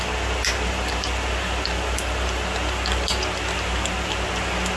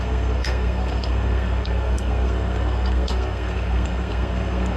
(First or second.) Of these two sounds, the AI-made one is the second